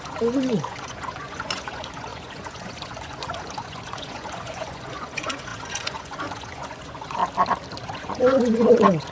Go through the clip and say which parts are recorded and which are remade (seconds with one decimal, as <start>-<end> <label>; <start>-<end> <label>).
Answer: 0.0-7.2 remade; 7.2-7.8 recorded; 7.8-9.1 remade